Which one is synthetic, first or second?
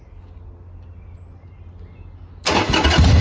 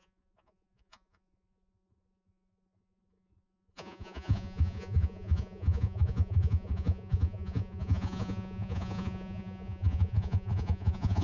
second